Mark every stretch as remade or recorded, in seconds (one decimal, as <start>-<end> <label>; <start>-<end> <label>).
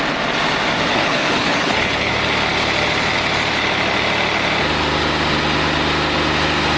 0.0-0.9 recorded; 0.9-2.1 remade; 2.1-6.8 recorded